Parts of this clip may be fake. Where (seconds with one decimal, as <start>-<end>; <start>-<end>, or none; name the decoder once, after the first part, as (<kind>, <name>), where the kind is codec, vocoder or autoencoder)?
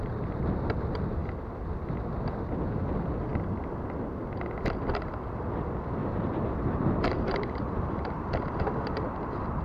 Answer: 6.0-8.3 (vocoder, BigVGAN v2)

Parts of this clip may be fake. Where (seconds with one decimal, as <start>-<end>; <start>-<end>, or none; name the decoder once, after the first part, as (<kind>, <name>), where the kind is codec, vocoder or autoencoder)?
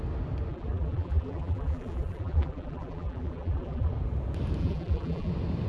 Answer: 0.5-3.9 (vocoder, BigVGAN v2); 4.6-5.3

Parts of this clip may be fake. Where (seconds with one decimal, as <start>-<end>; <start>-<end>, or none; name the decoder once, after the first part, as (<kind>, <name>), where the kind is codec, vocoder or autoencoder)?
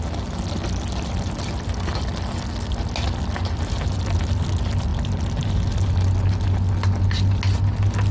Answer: none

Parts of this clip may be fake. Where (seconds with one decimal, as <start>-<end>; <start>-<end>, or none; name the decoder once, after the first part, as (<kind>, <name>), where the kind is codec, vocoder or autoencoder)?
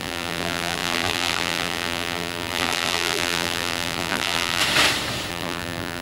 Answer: 0.0-4.6 (vocoder, BigVGAN v2); 5.3-6.0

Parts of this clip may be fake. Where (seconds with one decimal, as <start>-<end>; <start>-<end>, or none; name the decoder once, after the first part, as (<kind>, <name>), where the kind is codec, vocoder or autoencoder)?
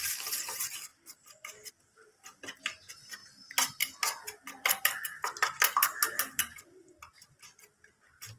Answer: 0.9-1.7 (vocoder, BigVGAN v2); 3.2-6.2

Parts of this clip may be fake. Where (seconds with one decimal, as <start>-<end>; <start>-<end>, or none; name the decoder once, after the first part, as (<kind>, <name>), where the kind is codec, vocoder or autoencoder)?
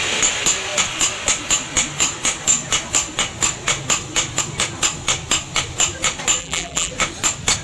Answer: 6.4-6.9 (vocoder, BigVGAN v2)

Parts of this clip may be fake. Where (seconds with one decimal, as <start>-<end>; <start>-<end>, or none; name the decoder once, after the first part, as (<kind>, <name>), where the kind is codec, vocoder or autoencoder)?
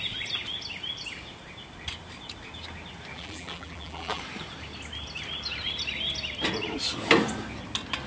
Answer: 3.1-4.2 (vocoder, BigVGAN v2)